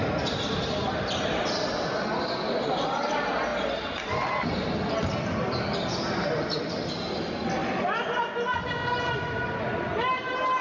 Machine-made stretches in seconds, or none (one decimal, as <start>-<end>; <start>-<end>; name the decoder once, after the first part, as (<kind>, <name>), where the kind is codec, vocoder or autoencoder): 7.6-8.1 (vocoder, BigVGAN v2)